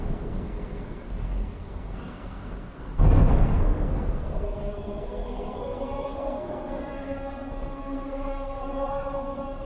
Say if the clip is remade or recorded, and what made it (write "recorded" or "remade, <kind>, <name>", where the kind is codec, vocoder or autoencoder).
remade, codec, SNAC